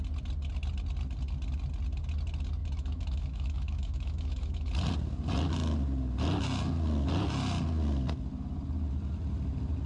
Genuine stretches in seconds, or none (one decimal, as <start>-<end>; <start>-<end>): 0.0-2.6; 4.7-9.9

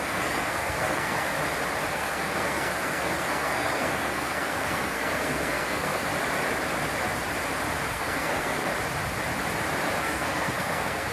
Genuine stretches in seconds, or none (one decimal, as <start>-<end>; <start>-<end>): 1.3-1.9; 6.1-7.9; 8.7-10.0

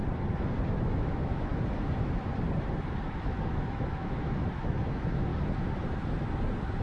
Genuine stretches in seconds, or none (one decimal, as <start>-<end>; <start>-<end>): 0.0-0.7; 1.5-3.1; 5.3-6.8